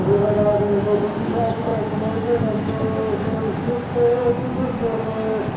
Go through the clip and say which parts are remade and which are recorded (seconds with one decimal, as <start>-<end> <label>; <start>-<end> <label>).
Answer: 0.0-5.6 recorded